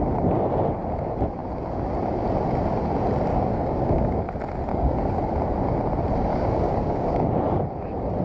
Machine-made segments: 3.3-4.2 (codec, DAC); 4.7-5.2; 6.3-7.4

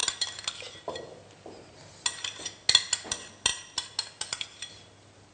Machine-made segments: none